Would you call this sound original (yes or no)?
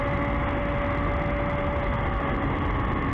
yes